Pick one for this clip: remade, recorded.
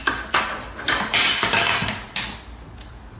recorded